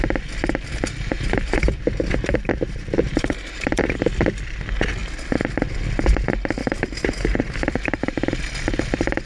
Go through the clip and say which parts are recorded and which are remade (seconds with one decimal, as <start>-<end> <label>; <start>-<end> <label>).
0.0-1.1 recorded; 1.1-4.0 remade; 4.0-6.6 recorded; 6.6-8.4 remade; 8.4-9.3 recorded